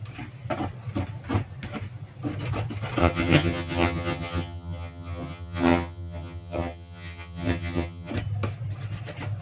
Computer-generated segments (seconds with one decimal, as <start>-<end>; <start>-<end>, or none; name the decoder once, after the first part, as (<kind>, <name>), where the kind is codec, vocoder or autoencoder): 3.0-8.1 (vocoder, HiFi-GAN)